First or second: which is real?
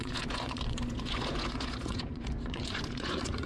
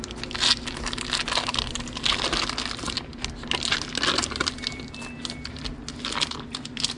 second